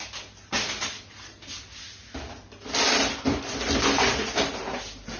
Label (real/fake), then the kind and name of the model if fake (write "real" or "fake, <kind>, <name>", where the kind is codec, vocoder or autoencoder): real